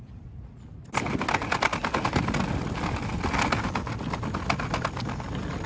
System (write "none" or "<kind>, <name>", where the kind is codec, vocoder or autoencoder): none